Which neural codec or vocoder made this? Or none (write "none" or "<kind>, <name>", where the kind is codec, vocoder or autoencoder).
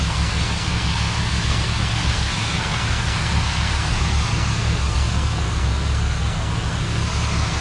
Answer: codec, SNAC